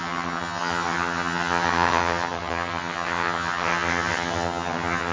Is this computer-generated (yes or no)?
yes